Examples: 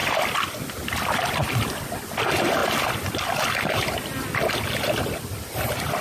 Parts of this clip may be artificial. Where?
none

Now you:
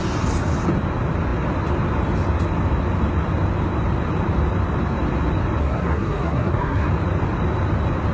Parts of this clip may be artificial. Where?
5.6-6.9 (codec, SNAC)

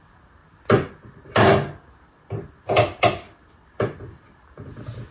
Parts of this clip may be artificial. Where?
none

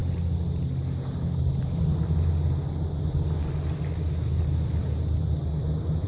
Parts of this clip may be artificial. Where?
none

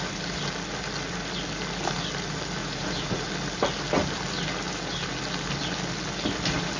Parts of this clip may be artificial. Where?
2.6-3.3 (vocoder, Vocos)

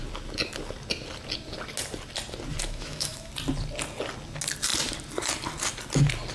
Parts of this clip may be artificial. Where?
2.6-3.3 (autoencoder, DAC-VAE)

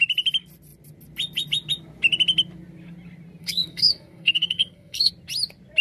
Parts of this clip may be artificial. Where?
3.4-5.1 (codec, SNAC)

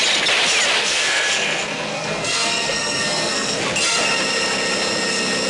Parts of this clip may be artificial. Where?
0.8-3.6 (codec, SNAC)